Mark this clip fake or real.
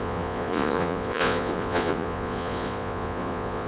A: fake